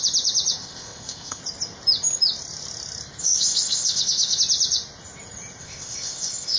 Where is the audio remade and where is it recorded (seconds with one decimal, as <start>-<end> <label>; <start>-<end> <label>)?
0.0-0.6 recorded; 0.6-1.4 remade; 1.4-3.2 recorded; 3.2-4.4 remade; 4.4-5.6 recorded; 5.6-6.6 remade